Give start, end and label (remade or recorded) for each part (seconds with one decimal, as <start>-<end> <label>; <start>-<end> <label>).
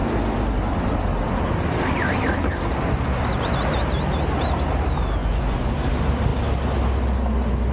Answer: 0.0-5.2 recorded; 5.2-5.7 remade; 5.7-7.7 recorded